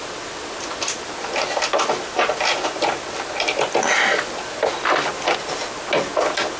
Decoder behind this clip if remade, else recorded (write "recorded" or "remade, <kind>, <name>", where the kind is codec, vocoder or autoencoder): recorded